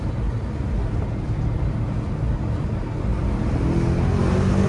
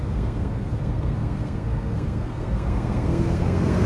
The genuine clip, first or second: first